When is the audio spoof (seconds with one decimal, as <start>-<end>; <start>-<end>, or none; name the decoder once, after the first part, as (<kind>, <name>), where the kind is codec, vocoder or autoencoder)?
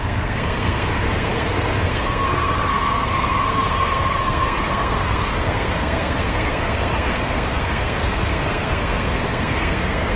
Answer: 0.0-10.2 (codec, SNAC)